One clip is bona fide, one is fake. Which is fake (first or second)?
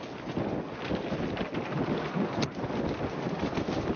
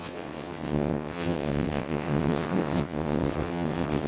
second